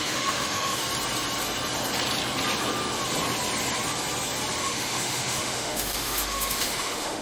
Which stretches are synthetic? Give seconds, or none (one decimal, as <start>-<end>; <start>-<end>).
0.0-0.8; 4.6-7.2